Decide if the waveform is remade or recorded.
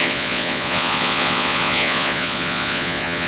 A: remade